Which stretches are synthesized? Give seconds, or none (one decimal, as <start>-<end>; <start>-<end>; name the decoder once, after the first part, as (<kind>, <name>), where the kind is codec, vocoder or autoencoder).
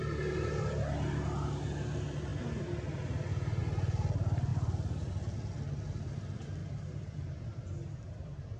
4.5-5.1 (vocoder, BigVGAN v2); 6.6-8.6